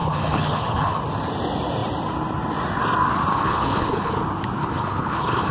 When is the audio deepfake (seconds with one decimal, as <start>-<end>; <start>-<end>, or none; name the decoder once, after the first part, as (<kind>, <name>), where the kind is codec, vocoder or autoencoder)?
0.0-1.0 (codec, HILCodec); 3.3-4.1; 4.6-5.5